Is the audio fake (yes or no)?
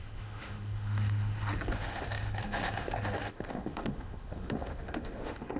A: yes